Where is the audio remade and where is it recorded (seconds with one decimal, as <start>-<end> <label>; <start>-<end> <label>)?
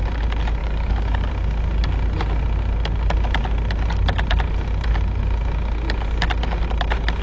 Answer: 0.0-0.6 recorded; 0.6-1.3 remade; 1.3-7.2 recorded